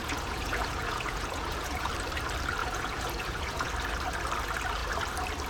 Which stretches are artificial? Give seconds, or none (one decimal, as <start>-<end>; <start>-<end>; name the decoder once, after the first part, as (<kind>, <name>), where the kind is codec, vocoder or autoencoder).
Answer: 0.0-1.9 (vocoder, Vocos); 2.6-3.7